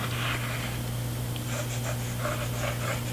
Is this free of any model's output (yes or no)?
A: yes